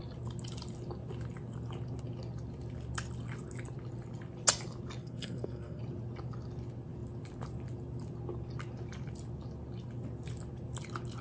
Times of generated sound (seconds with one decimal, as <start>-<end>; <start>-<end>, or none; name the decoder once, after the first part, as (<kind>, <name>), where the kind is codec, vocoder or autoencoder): 5.0-5.8 (codec, SNAC)